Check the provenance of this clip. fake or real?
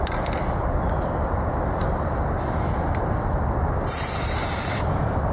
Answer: real